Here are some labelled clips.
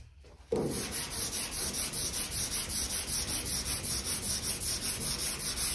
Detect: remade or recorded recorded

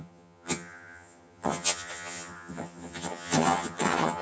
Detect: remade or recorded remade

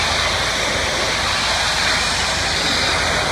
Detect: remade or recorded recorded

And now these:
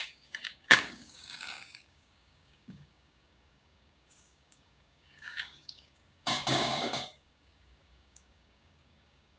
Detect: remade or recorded remade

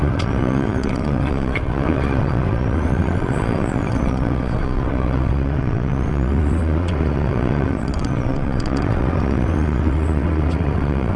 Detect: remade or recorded remade